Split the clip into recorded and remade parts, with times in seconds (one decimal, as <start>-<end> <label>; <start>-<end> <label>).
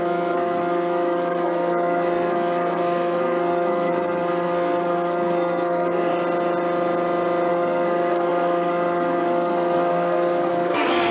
0.0-6.1 remade; 6.1-7.5 recorded; 7.5-11.1 remade